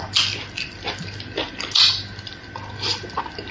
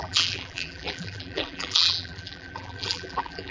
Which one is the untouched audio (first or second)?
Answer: first